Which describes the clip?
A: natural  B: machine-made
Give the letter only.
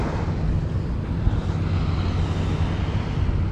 A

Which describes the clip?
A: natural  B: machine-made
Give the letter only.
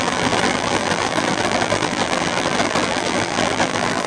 B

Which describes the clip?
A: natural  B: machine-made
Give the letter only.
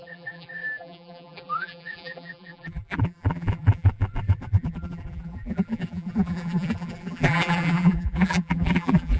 B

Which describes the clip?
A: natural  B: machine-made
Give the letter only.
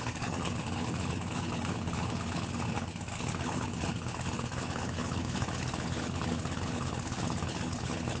B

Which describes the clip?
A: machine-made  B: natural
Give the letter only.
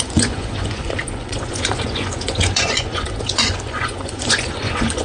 A